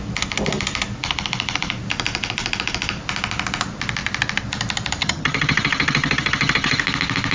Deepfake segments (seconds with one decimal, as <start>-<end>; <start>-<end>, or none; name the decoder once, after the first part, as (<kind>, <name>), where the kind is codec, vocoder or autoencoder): 5.0-6.8 (vocoder, HiFi-GAN)

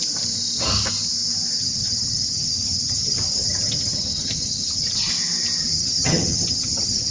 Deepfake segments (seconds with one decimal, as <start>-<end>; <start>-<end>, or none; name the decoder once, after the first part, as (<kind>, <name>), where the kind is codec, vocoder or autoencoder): 1.6-5.1 (vocoder, HiFi-GAN); 5.6-7.1